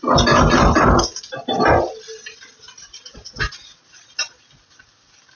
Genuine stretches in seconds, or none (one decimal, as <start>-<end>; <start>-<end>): 0.0-3.1; 3.8-5.4